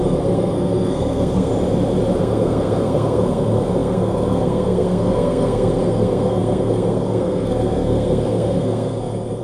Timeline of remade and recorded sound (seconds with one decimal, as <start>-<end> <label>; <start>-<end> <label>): 0.0-1.5 remade; 1.5-2.2 recorded; 2.2-9.4 remade